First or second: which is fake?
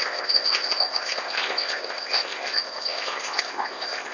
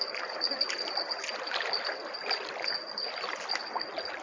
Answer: first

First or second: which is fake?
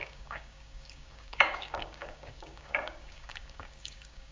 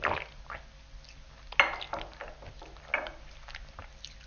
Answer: first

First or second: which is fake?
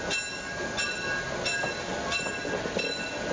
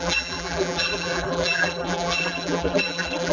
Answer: second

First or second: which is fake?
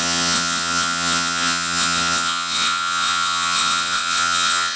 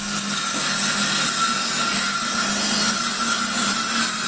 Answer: first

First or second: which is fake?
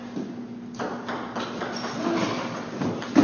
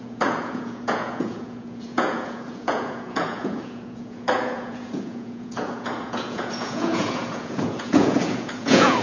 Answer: second